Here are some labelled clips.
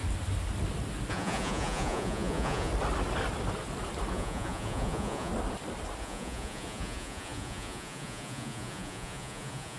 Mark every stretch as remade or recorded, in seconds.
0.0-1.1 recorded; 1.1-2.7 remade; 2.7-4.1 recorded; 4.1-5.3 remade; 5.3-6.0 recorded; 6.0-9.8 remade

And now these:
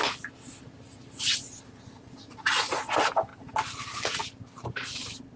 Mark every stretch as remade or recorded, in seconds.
0.0-2.2 recorded; 2.2-2.9 remade; 2.9-5.4 recorded

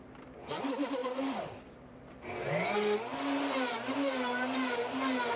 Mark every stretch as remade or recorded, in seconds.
0.0-1.0 recorded; 1.0-2.0 remade; 2.0-3.1 recorded; 3.1-4.1 remade; 4.1-5.4 recorded

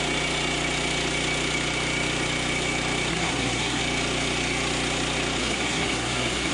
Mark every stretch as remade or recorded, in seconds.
0.0-3.1 recorded; 3.1-3.8 remade; 3.8-5.4 recorded; 5.4-6.5 remade

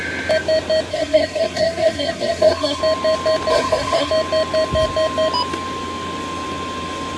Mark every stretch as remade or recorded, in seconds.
0.0-0.9 recorded; 0.9-2.8 remade; 2.8-3.5 recorded; 3.5-4.1 remade; 4.1-7.2 recorded